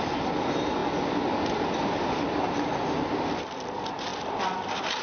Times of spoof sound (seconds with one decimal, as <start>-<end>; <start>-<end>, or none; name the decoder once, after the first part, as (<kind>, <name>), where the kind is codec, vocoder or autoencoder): none